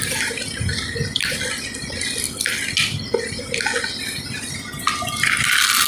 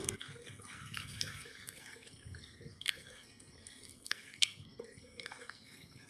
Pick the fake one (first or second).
second